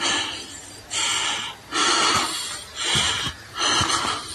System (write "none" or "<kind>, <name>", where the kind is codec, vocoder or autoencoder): none